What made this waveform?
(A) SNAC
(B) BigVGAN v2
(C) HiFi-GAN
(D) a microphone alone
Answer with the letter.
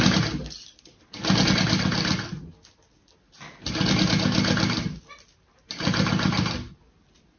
D